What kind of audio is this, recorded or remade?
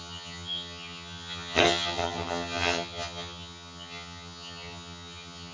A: remade